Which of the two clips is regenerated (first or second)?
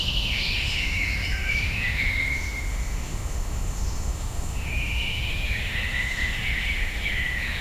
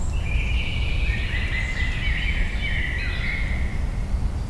first